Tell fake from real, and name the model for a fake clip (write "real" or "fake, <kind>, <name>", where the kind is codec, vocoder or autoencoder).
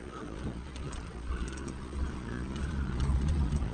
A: fake, vocoder, Vocos